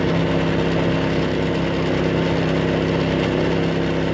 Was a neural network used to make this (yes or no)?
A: no